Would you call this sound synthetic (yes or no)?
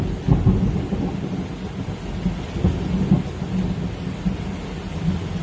no